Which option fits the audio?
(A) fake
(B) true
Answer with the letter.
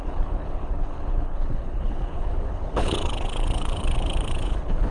A